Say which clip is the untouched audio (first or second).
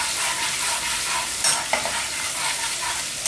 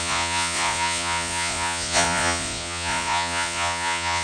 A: first